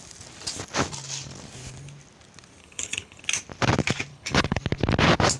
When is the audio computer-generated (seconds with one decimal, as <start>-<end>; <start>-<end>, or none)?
2.6-3.2; 4.1-4.6

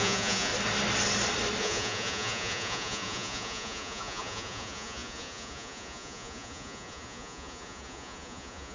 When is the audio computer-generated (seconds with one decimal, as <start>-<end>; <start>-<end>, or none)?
0.0-0.5; 1.6-8.7

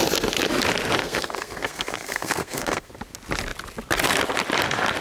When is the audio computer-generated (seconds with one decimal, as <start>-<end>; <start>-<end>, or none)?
1.0-2.9

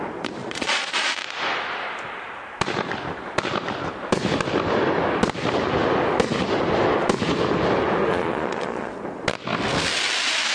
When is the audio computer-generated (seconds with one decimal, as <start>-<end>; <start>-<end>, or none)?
0.4-1.1; 8.1-8.9

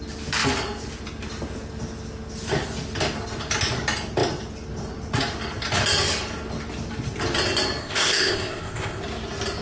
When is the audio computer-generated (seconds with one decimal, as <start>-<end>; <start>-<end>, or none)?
7.8-9.0

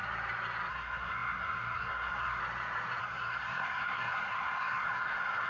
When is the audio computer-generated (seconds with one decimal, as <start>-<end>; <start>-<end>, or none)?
0.7-2.4; 3.0-5.5

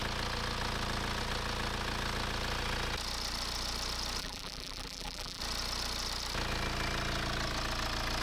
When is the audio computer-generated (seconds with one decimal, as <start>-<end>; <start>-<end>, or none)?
4.2-5.4

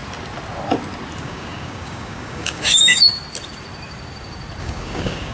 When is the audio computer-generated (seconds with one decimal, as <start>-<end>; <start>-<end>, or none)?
1.2-3.1; 4.6-5.3